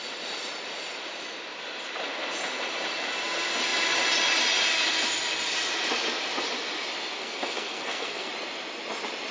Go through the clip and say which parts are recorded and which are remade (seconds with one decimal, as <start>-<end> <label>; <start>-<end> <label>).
0.0-7.2 recorded; 7.2-8.3 remade; 8.3-9.3 recorded